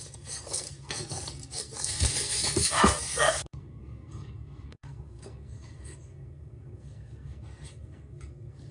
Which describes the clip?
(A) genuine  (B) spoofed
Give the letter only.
B